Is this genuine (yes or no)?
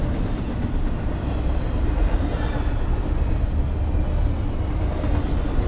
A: yes